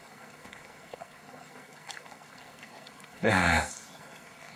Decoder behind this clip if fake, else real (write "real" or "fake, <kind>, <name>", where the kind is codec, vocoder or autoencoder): fake, codec, SNAC